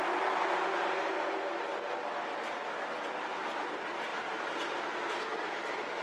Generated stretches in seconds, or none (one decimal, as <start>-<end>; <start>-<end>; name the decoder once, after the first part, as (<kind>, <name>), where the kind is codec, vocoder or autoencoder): 4.1-5.0 (vocoder, BigVGAN v2)